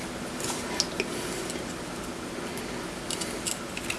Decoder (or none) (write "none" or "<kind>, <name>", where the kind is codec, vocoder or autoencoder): none